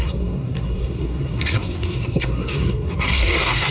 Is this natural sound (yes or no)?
no